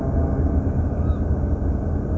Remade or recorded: recorded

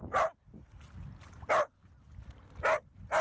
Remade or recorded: recorded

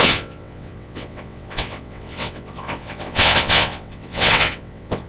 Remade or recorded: remade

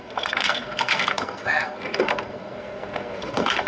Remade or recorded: remade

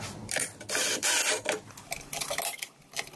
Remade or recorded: recorded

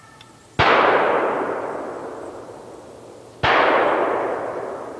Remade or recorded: recorded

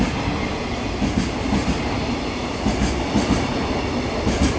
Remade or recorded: recorded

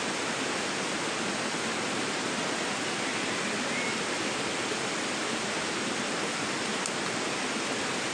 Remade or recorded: recorded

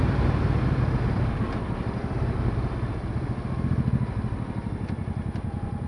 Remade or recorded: recorded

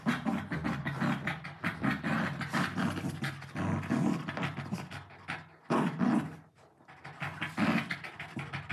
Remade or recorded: recorded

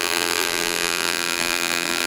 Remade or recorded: remade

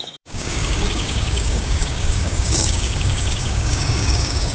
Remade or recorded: remade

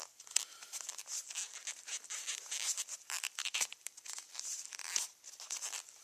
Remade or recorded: recorded